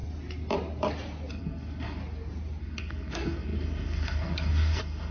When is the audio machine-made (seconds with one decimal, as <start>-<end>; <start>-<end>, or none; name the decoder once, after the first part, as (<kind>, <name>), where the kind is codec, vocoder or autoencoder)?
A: 1.3-2.0 (codec, SNAC); 2.6-5.1